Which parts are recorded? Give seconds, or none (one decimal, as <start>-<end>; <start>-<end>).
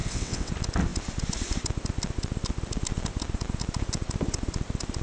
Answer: 0.5-5.0